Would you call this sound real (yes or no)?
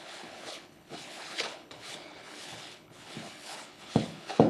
no